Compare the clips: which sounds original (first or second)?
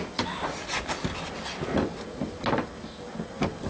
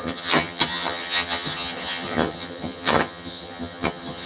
first